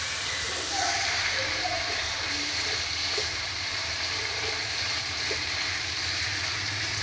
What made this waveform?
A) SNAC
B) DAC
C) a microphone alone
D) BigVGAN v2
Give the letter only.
D